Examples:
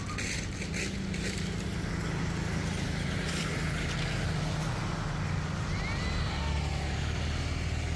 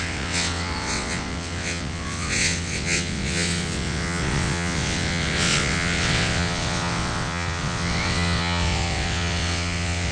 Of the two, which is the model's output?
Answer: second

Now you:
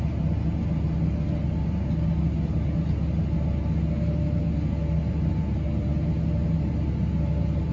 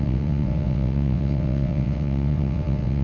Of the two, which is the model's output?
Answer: second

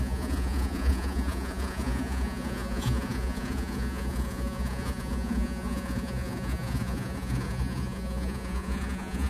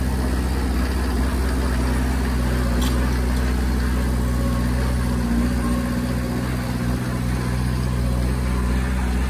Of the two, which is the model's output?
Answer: first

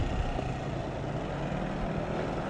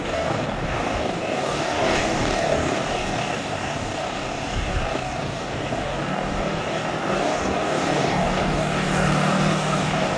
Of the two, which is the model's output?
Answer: second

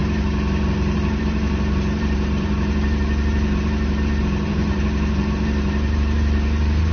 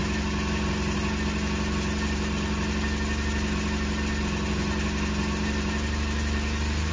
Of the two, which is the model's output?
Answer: first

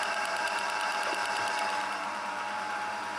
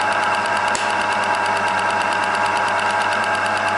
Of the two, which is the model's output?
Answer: first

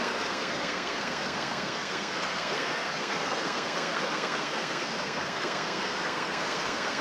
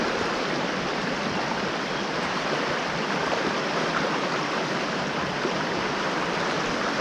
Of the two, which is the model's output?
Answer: first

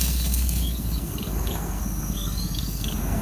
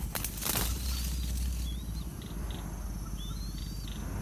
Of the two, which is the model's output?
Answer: first